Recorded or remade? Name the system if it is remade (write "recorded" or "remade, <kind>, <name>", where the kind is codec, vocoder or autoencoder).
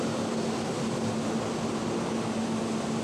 recorded